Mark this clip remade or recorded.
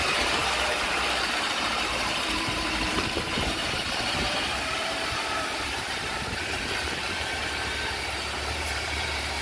remade